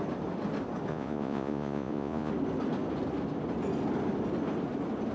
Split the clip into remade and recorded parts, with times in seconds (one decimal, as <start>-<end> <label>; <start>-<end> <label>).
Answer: 0.0-0.9 recorded; 0.9-2.3 remade; 2.3-5.1 recorded